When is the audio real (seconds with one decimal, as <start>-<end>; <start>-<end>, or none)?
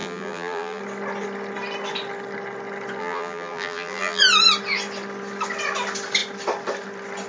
0.8-3.0; 4.2-7.3